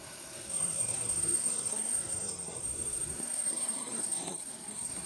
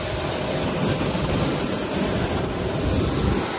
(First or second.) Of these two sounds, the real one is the second